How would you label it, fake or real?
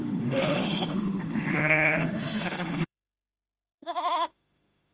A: fake